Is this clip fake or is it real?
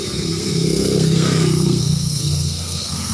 fake